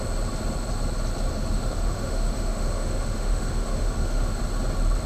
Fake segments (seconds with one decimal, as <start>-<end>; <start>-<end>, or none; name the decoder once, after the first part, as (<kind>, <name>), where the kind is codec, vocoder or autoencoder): 1.3-4.4 (autoencoder, DAC-VAE)